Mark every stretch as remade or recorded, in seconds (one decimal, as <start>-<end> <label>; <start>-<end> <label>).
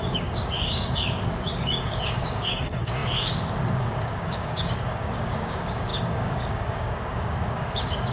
0.0-8.1 remade